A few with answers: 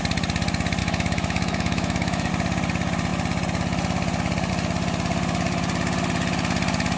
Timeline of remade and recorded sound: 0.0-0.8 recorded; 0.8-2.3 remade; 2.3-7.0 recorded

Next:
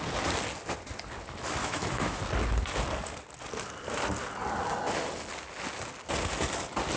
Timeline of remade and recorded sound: 0.0-1.6 recorded; 1.6-2.2 remade; 2.2-7.0 recorded

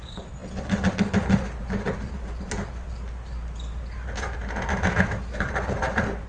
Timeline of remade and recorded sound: 0.0-4.7 recorded; 4.7-5.4 remade; 5.4-6.3 recorded

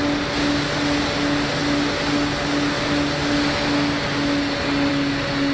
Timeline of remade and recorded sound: 0.0-5.5 recorded

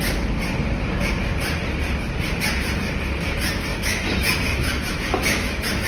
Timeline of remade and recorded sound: 0.0-3.7 recorded; 3.7-5.9 remade